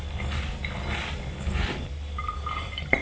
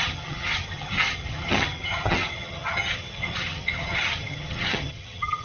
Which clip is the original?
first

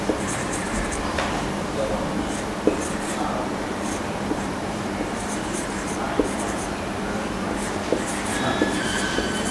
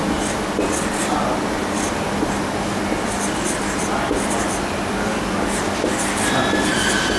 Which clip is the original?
second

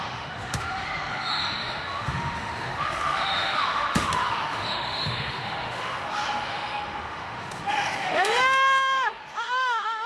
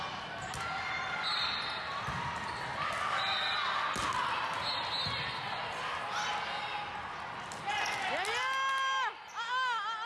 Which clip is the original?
second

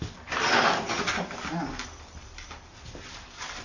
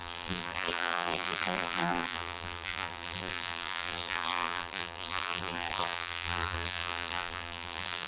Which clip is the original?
first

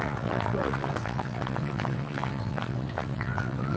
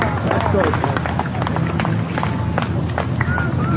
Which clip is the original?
second